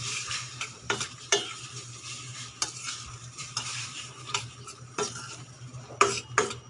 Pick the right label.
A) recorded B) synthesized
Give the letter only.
B